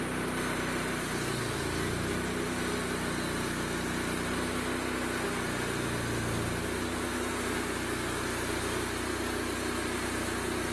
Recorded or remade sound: recorded